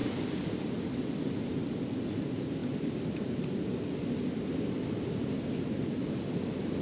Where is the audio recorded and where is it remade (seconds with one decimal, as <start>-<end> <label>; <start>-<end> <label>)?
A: 0.0-6.8 recorded